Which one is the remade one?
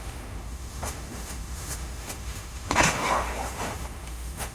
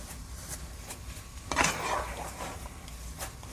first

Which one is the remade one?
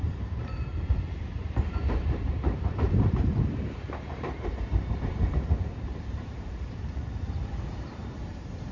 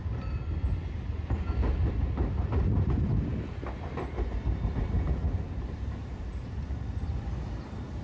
first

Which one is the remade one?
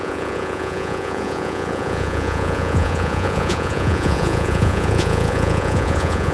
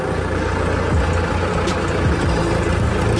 first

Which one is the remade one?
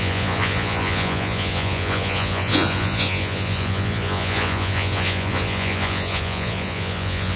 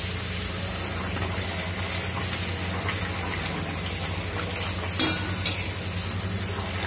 first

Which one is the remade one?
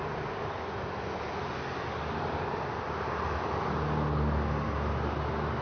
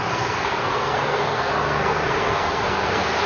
second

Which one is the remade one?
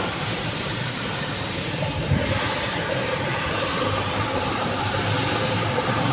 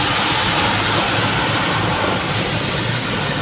first